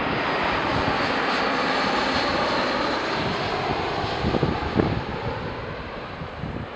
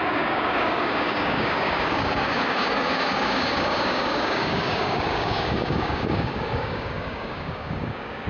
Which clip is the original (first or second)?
first